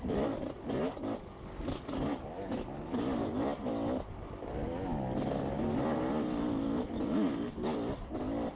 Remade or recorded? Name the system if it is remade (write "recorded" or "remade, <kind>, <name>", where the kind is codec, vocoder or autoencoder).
recorded